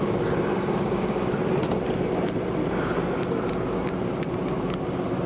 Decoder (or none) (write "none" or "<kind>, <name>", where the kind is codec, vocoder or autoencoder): none